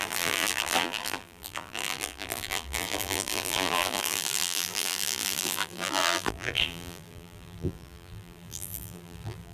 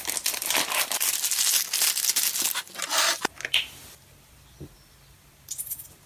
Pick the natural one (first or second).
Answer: second